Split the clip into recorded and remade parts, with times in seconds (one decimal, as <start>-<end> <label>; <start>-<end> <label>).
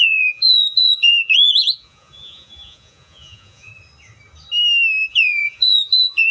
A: 0.0-3.7 remade; 3.7-5.1 recorded; 5.1-6.3 remade